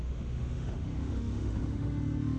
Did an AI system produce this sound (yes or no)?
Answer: yes